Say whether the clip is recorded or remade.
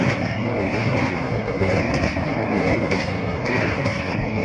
remade